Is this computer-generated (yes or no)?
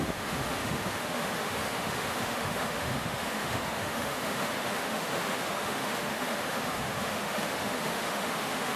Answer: yes